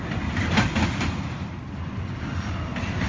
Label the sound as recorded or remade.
recorded